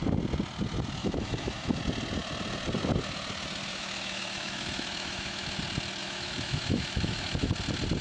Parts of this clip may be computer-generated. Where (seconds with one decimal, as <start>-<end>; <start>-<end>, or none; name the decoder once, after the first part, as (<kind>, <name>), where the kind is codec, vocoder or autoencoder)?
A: 1.0-1.8 (autoencoder, DAC-VAE); 3.7-5.6; 6.0-7.5

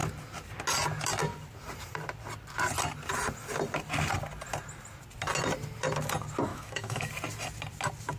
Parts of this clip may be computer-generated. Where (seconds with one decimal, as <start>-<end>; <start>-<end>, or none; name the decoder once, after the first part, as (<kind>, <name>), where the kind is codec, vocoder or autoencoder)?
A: 6.5-7.1 (autoencoder, DAC-VAE)

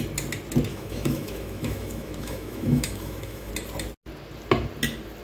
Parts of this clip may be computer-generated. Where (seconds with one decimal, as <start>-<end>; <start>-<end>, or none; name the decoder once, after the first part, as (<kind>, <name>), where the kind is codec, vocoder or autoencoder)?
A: 0.7-3.5 (autoencoder, DAC-VAE)

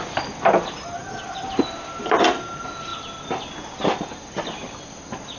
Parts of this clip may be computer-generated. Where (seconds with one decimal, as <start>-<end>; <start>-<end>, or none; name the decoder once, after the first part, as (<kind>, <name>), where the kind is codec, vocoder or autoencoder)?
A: none

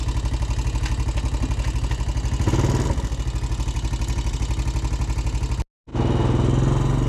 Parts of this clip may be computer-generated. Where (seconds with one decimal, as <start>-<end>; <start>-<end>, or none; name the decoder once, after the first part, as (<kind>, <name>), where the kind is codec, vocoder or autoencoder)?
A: none

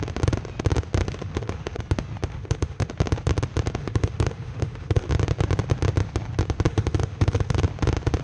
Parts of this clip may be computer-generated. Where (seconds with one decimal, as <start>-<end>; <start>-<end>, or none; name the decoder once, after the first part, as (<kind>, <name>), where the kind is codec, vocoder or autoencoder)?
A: 1.0-1.8 (autoencoder, DAC-VAE); 2.3-2.9; 3.8-5.1; 6.7-7.6